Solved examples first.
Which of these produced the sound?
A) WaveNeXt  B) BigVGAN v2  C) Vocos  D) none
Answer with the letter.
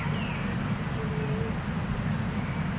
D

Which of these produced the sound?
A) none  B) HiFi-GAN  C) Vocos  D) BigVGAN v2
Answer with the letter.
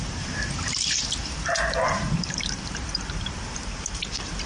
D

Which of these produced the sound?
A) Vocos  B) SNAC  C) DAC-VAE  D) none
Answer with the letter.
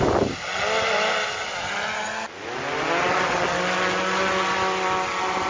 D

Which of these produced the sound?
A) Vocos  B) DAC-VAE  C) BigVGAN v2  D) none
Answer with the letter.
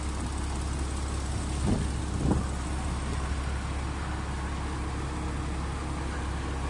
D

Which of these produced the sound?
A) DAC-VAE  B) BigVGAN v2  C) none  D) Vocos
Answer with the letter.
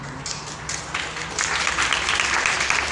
C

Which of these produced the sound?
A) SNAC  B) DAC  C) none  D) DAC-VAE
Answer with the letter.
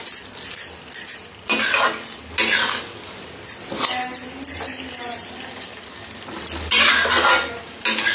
C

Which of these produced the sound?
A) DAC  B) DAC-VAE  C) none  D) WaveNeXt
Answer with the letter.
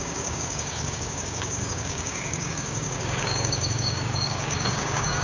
A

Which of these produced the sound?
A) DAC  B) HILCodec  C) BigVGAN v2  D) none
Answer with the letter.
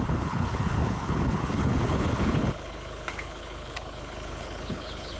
B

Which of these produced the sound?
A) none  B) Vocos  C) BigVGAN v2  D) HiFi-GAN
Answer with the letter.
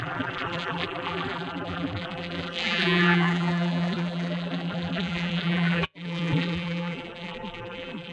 C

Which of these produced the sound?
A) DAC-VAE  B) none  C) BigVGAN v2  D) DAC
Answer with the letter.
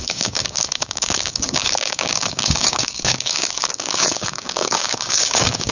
D